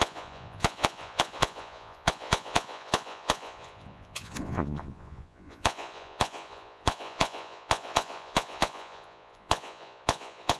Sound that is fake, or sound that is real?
fake